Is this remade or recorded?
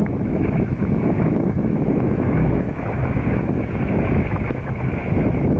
remade